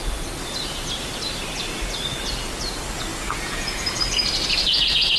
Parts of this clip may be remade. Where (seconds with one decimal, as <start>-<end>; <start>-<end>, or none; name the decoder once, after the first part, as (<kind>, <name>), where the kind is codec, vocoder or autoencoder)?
3.1-4.0 (vocoder, Vocos)